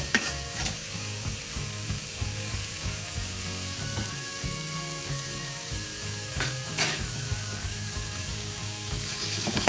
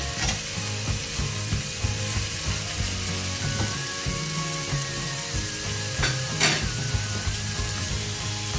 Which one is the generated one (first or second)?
first